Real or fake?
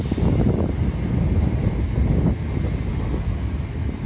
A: real